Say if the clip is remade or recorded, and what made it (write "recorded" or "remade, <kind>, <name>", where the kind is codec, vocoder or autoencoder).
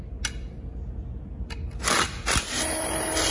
recorded